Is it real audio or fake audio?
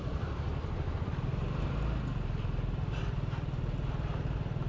real